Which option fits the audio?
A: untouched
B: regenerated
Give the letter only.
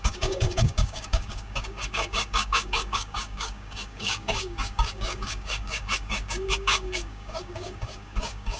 B